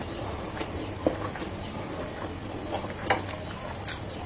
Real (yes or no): yes